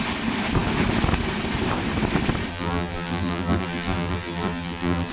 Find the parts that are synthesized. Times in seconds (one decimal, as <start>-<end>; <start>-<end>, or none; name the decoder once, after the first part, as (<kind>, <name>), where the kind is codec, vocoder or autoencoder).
2.5-5.1 (vocoder, BigVGAN v2)